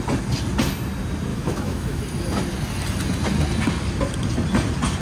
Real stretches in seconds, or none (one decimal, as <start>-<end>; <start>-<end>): 0.0-1.3; 2.0-5.0